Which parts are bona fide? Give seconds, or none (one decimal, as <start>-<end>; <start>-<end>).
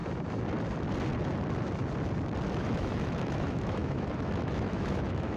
0.0-2.6